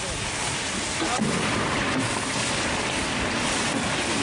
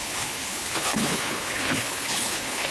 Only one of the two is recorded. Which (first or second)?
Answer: first